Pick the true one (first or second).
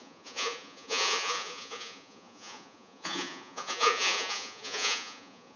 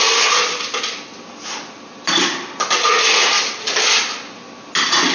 second